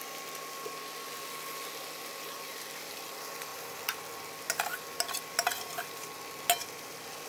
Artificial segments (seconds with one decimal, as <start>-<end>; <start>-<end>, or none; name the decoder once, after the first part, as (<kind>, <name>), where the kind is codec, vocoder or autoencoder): none